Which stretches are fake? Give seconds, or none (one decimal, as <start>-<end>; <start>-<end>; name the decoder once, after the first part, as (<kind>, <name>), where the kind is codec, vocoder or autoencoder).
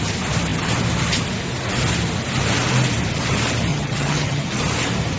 3.7-4.6 (vocoder, HiFi-GAN)